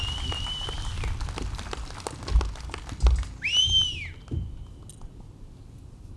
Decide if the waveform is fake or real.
real